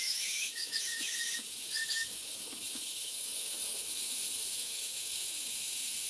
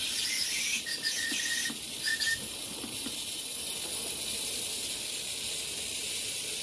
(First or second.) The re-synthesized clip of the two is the first